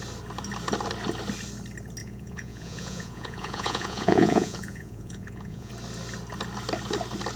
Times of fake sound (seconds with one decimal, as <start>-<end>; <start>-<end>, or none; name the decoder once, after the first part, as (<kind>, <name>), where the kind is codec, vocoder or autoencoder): 2.0-5.7 (vocoder, Vocos)